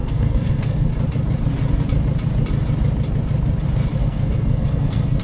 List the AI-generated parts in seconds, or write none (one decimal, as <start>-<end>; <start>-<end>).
0.0-0.9; 4.0-5.2